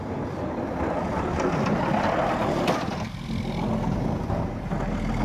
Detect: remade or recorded recorded